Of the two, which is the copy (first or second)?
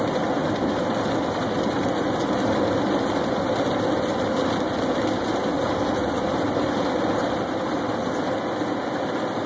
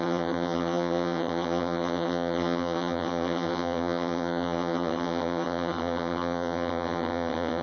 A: second